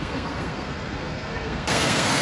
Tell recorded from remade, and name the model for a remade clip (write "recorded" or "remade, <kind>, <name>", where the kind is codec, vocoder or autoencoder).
remade, codec, SNAC